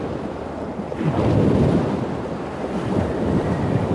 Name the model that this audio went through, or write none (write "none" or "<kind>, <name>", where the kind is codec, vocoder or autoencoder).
none